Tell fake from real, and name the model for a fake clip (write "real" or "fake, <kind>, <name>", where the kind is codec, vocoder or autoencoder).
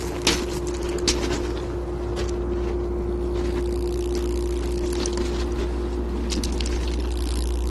real